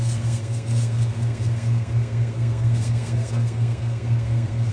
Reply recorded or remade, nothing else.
remade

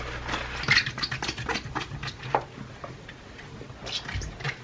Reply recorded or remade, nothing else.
recorded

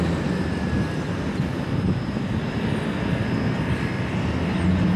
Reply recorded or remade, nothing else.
recorded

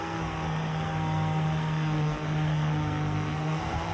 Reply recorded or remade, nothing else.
remade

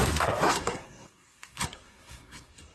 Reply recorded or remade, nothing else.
remade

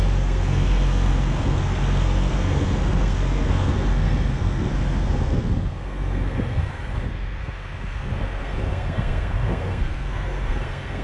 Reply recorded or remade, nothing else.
remade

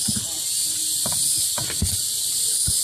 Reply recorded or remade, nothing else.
recorded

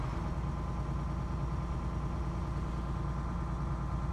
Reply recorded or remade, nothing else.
recorded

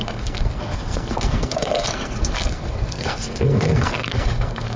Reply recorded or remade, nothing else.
remade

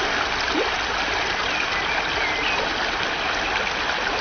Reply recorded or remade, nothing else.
recorded